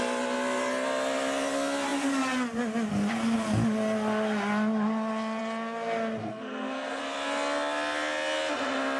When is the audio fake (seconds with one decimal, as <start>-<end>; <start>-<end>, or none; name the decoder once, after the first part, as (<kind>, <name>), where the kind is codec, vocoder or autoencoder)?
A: 6.2-7.0 (codec, SNAC)